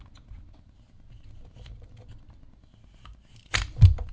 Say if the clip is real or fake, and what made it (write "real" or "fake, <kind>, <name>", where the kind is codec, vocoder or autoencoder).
real